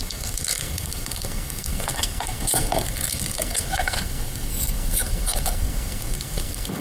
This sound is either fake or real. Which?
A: fake